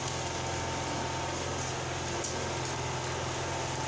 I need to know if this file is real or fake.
real